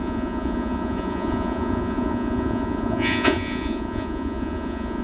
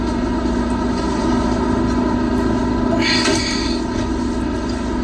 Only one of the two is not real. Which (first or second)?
first